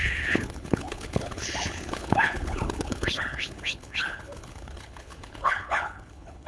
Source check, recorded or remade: remade